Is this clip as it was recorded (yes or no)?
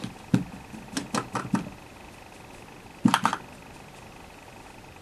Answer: yes